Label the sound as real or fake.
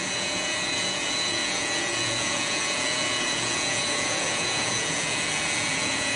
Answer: fake